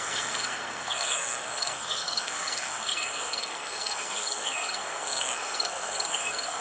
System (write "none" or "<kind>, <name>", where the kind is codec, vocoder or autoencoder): codec, SNAC